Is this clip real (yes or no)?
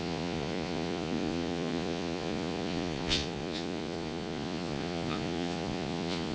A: no